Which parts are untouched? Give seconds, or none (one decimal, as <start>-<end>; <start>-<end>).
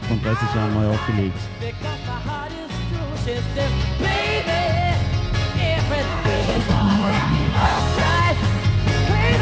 0.0-6.1; 7.8-9.4